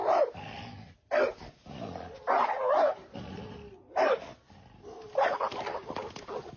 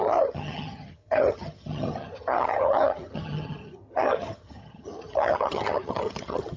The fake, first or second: second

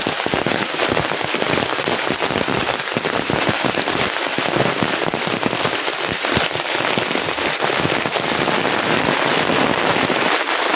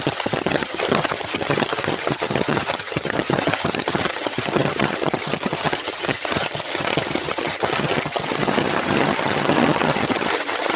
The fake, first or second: second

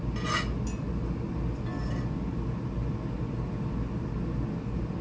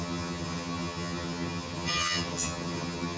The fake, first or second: second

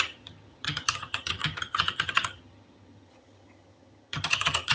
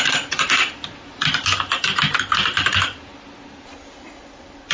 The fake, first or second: first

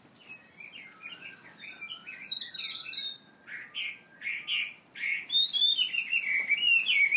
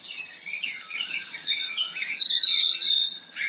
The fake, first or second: second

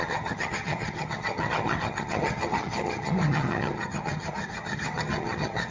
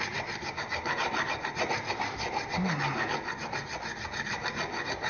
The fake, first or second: first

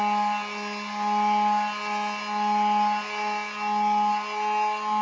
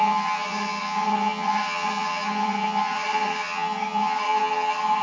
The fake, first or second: second